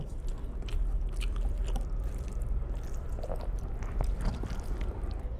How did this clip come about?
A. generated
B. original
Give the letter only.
A